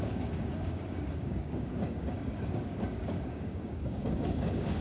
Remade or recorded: remade